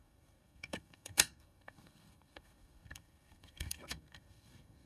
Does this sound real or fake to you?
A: fake